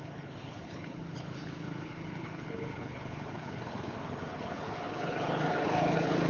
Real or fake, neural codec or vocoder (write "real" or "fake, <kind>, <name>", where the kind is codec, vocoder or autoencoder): fake, codec, HILCodec